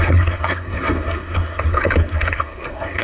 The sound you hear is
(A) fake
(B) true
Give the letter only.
A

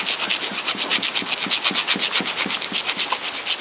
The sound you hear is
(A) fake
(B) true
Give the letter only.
B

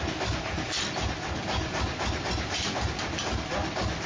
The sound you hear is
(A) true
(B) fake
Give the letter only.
A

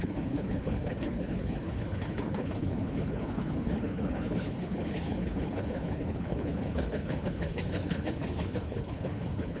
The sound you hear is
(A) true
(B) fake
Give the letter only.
B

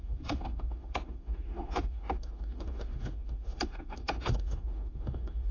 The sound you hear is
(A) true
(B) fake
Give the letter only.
B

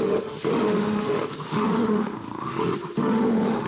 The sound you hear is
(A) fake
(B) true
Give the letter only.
A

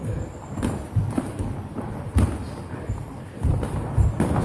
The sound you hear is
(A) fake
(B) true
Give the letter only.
B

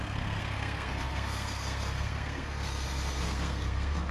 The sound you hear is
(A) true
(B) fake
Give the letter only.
B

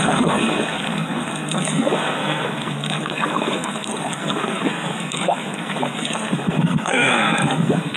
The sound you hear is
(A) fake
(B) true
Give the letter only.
A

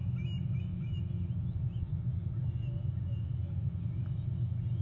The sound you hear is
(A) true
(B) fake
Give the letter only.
A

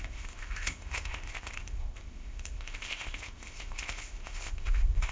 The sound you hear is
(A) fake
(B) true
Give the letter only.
A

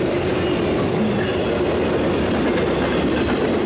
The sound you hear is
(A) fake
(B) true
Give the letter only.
B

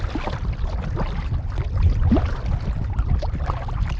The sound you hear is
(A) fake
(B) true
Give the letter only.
B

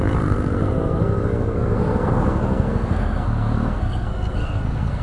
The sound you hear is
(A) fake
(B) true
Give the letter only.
A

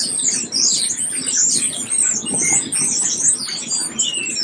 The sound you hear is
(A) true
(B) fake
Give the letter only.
A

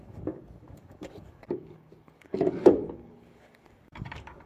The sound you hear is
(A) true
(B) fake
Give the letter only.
B